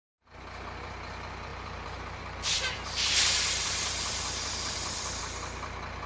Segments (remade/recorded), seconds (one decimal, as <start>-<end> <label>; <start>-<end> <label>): 0.0-1.5 recorded; 1.5-5.2 remade; 5.2-6.1 recorded